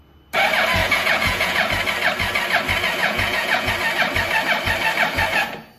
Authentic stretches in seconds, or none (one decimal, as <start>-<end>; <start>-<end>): 0.0-0.8; 1.7-3.0; 3.7-5.8